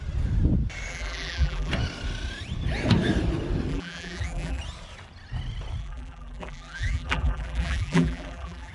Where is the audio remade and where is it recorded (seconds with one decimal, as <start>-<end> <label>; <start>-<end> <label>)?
0.0-0.9 recorded; 0.9-1.7 remade; 1.7-3.7 recorded; 3.7-4.6 remade; 4.6-5.8 recorded; 5.8-8.7 remade